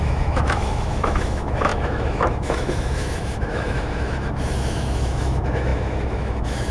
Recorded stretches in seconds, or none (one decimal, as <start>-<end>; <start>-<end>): none